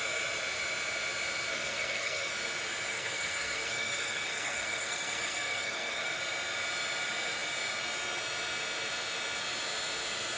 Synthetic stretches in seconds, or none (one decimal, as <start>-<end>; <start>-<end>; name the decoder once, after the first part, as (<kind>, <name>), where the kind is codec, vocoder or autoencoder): 1.5-2.3 (codec, SNAC); 2.9-6.2